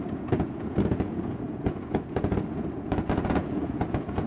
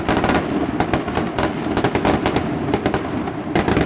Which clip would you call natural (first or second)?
second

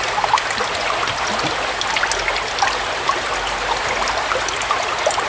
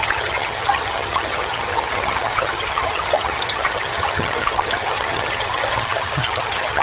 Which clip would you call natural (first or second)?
first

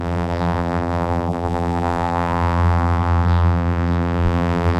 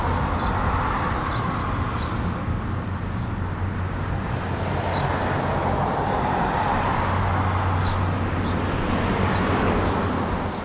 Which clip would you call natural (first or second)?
second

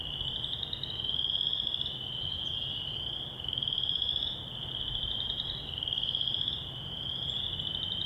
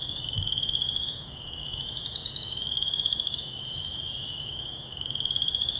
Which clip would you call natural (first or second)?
first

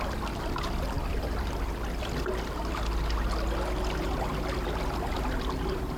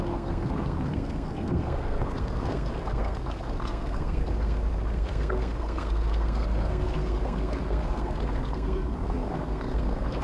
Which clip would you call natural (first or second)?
first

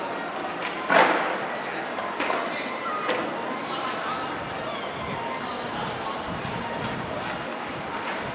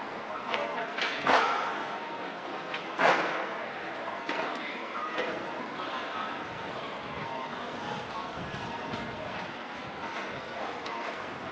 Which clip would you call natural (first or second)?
first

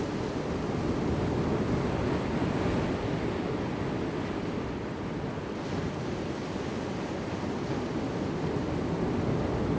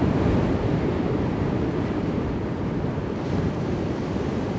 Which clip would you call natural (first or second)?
first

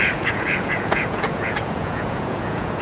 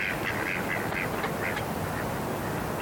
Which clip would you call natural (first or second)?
second